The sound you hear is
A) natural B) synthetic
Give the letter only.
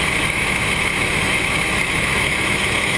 B